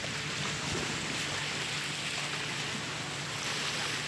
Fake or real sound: real